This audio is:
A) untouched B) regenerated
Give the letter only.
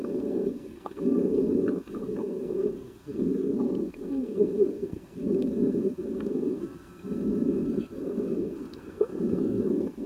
B